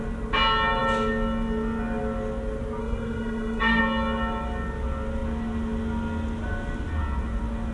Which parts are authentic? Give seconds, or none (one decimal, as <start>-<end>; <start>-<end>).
0.0-2.8; 3.8-7.7